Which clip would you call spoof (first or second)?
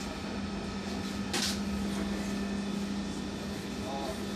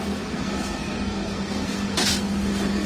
second